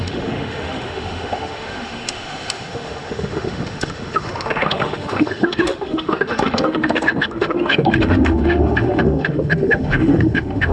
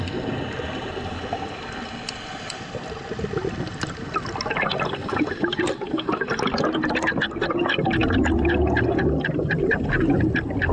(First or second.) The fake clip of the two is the first